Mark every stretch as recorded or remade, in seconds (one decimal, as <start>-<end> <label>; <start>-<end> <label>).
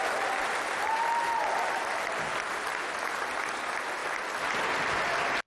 0.0-5.5 recorded